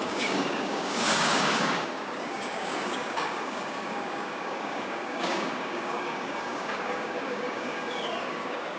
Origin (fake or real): fake